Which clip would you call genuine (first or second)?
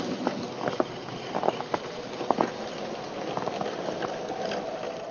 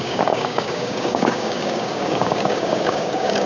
first